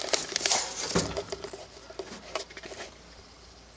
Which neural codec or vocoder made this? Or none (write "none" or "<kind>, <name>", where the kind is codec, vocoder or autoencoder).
none